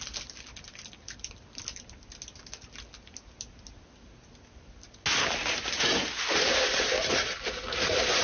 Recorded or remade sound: recorded